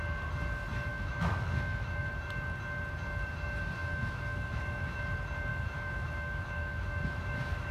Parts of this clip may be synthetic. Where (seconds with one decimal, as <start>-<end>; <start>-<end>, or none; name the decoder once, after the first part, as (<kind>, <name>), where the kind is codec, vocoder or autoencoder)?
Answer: 0.9-2.1 (autoencoder, DAC-VAE); 3.8-5.0; 5.5-7.7